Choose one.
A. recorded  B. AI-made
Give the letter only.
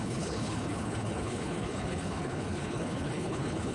B